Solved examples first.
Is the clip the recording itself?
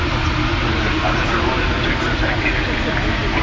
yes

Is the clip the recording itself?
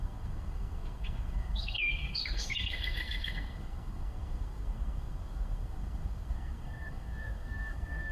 no